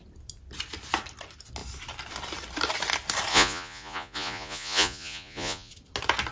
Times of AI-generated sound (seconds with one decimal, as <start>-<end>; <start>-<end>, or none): 3.3-5.7